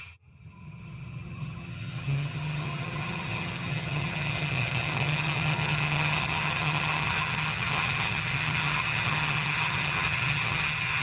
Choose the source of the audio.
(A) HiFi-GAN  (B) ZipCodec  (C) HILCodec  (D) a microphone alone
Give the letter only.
A